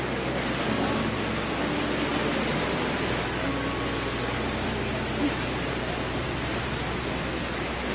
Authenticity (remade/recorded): recorded